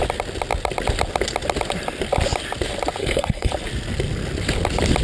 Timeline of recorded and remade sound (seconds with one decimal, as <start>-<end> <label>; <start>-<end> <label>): 0.0-3.0 recorded; 3.0-3.5 remade; 3.5-5.0 recorded